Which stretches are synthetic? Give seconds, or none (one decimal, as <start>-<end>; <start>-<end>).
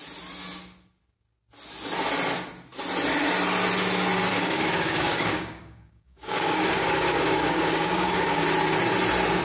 4.3-8.4